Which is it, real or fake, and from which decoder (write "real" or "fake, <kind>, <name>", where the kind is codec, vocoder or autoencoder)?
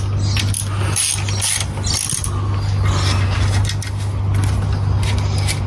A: real